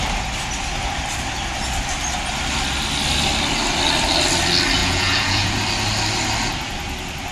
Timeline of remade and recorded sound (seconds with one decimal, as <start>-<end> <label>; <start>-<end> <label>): 0.0-4.8 recorded; 4.8-5.6 remade; 5.6-7.3 recorded